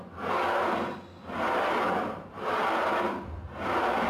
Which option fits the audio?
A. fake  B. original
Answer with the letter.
B